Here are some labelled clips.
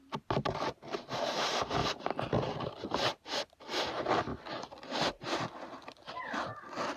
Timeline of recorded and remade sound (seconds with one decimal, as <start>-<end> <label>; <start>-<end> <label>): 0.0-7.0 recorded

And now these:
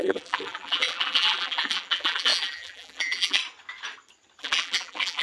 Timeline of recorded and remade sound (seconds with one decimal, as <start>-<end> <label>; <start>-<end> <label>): 0.0-3.4 remade; 3.4-4.4 recorded; 4.4-5.2 remade

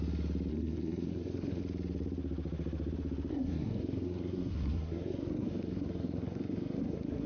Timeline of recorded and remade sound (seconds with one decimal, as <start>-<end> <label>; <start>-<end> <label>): 0.0-0.5 recorded; 0.5-1.6 remade; 1.6-3.3 recorded; 3.3-7.3 remade

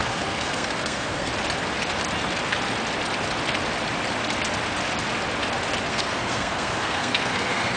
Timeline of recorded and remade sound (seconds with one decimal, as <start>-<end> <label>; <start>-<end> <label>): 0.0-1.3 remade; 1.3-5.9 recorded; 5.9-7.8 remade

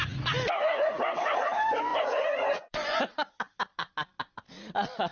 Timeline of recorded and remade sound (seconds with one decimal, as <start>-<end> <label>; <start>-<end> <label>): 0.0-1.9 recorded; 1.9-3.0 remade; 3.0-5.1 recorded